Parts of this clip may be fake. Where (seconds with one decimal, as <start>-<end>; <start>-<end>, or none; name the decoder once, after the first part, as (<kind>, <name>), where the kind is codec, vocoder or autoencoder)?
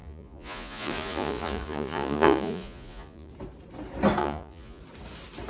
0.0-3.3 (vocoder, Vocos); 4.2-4.8